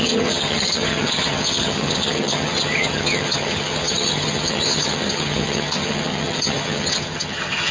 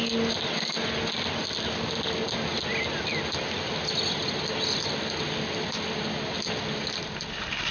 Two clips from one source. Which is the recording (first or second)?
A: second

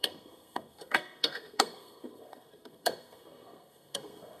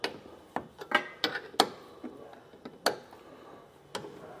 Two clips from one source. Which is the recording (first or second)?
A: second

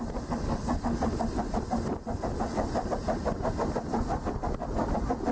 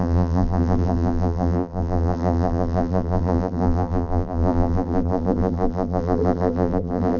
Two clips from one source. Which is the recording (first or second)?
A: first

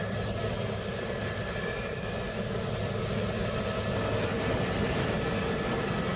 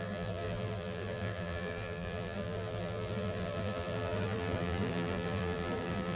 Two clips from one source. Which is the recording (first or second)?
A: first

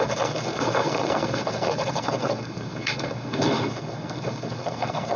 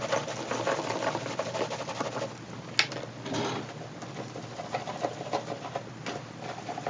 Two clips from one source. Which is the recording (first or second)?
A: second